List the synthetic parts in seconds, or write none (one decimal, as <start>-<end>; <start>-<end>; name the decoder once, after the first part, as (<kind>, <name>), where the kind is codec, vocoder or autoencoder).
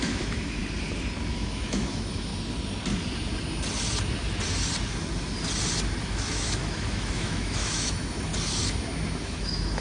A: 0.0-0.6 (autoencoder, DAC-VAE); 1.3-2.3; 6.0-8.3; 9.2-9.8